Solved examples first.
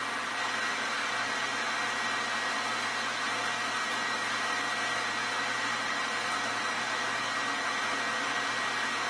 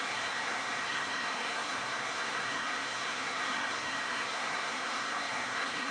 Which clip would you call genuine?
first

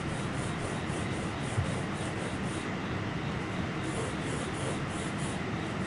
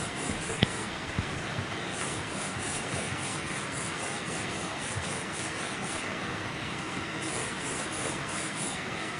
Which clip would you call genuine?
first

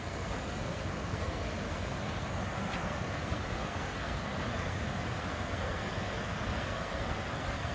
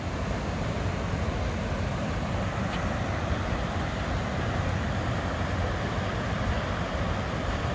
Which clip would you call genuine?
second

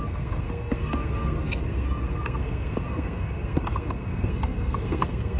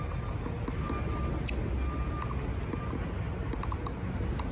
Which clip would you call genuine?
second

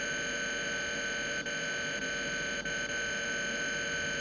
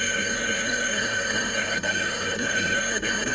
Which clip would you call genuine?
first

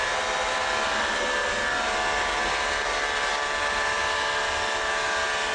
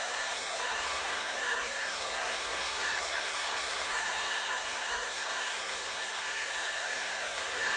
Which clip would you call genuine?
first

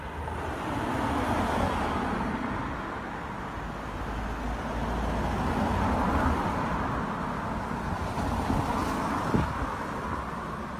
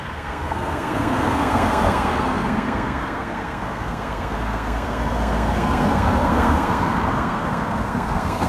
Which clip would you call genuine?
first